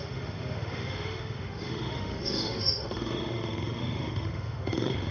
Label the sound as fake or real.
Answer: fake